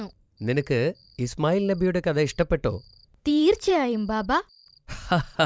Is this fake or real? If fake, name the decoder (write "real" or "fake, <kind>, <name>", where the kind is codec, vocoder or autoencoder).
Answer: fake, vocoder, BigVGAN v2